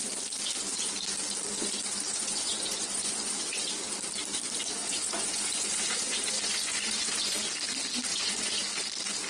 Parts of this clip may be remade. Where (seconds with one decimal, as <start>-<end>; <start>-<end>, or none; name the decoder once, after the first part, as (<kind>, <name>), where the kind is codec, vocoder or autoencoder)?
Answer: 2.1-3.7 (vocoder, Vocos); 4.8-7.5; 8.1-8.6